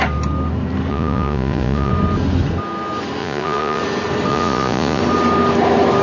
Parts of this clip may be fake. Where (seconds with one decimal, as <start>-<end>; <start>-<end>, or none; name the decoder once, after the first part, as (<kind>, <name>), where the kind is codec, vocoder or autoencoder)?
0.9-1.9 (vocoder, Vocos); 3.2-3.8; 4.3-5.0